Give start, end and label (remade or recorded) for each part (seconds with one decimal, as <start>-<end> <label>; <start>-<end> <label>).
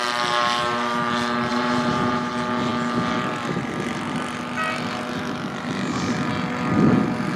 0.0-1.5 recorded; 1.5-2.3 remade; 2.3-7.4 recorded